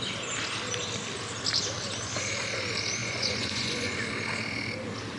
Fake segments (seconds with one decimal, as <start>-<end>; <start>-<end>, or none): 3.0-4.1